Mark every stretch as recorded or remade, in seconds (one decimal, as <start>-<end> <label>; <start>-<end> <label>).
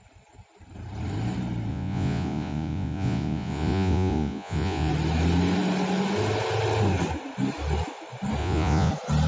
0.0-1.7 recorded; 1.7-4.9 remade; 4.9-8.4 recorded; 8.4-8.9 remade; 8.9-9.3 recorded